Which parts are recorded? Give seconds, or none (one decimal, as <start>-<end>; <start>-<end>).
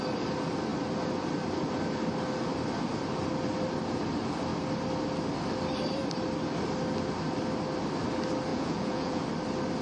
0.0-8.5; 9.2-9.8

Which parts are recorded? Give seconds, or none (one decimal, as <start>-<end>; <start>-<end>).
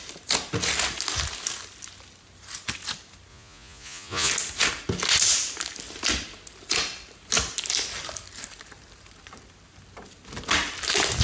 0.0-3.3; 4.3-11.2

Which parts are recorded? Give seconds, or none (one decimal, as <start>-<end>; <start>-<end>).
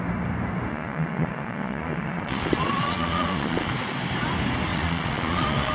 0.0-0.7; 3.7-4.7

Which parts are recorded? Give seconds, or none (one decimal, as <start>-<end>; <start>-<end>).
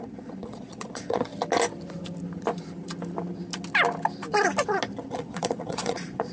1.3-5.1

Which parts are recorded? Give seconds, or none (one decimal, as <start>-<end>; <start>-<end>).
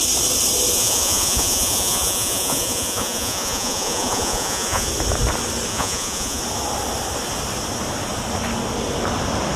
0.0-0.7; 4.9-5.7; 6.4-9.6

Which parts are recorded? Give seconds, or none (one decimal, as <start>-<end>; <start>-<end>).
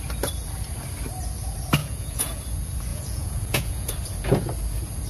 0.0-1.8; 2.4-2.9; 3.9-5.1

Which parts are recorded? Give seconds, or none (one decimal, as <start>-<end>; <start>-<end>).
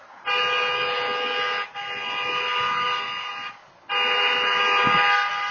0.0-5.5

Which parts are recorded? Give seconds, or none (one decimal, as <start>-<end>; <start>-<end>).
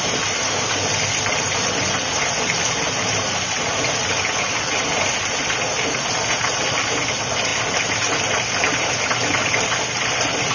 0.0-10.5